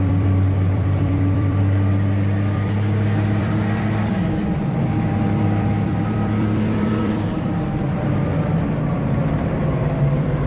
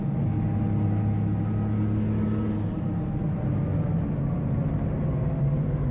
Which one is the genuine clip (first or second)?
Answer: second